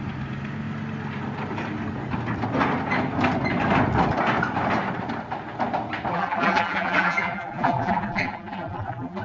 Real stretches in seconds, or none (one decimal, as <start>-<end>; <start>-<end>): 0.0-6.1